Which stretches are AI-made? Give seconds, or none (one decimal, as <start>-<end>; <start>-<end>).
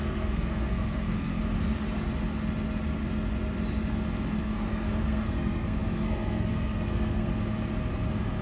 0.0-1.4; 4.3-7.3